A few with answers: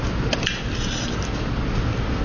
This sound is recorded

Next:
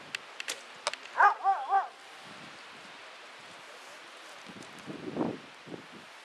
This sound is recorded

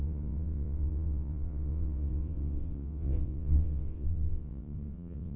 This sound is remade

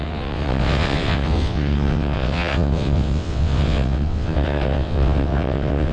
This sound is remade